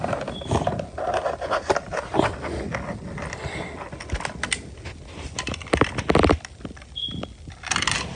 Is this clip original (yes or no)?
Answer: yes